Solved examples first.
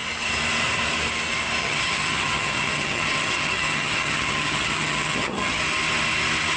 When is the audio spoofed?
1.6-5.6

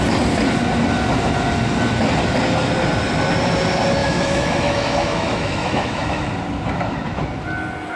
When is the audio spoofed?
4.0-6.3